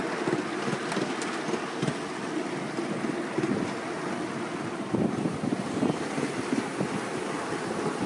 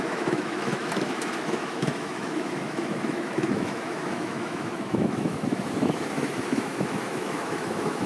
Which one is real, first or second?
first